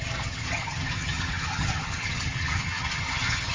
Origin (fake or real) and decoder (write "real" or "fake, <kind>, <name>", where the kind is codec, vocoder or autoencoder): fake, vocoder, HiFi-GAN